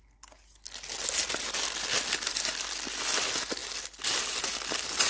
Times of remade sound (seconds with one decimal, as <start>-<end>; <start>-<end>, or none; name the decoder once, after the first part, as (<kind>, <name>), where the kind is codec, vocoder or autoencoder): none